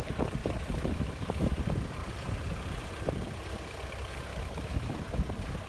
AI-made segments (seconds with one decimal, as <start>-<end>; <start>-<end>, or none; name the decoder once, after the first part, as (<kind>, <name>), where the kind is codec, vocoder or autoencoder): 0.4-1.6 (autoencoder, DAC-VAE); 4.3-5.0